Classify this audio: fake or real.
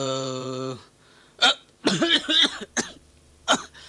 fake